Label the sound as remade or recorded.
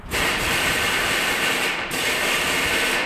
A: remade